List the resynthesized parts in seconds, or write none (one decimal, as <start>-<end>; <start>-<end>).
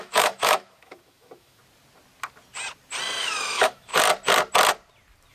0.0-1.6; 3.2-3.9